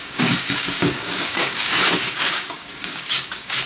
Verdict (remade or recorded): remade